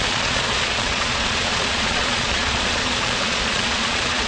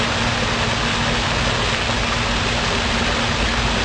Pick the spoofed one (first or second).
first